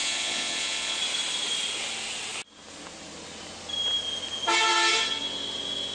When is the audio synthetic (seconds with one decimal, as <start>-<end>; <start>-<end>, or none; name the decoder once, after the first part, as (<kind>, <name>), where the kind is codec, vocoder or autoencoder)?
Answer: 0.0-1.0 (vocoder, Vocos)